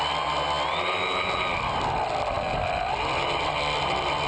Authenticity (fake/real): real